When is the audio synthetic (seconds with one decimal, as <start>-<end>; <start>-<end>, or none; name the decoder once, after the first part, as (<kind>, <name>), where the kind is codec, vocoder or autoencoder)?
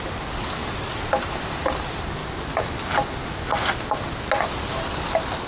none